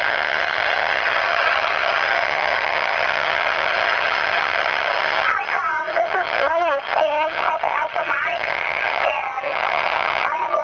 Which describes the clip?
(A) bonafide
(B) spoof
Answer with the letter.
B